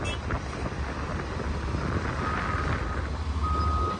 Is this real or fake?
real